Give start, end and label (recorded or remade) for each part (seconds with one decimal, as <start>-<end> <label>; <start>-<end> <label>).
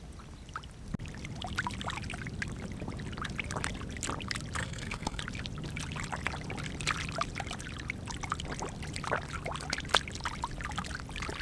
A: 0.0-4.6 recorded; 4.6-5.2 remade; 5.2-11.4 recorded